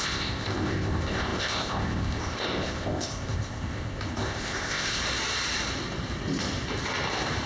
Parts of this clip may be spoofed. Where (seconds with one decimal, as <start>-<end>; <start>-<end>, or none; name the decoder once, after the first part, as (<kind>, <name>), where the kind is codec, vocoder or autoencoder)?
0.0-5.0 (codec, ZipCodec)